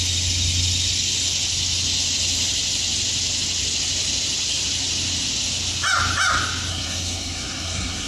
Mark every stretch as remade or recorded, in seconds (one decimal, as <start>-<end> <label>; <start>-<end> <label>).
0.0-6.7 recorded; 6.7-8.1 remade